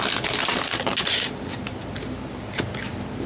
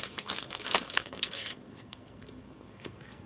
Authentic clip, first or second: first